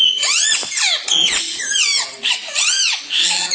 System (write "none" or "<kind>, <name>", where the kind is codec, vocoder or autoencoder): vocoder, Vocos